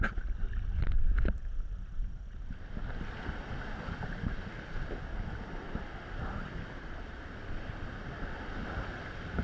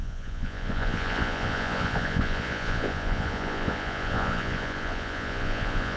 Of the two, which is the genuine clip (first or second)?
first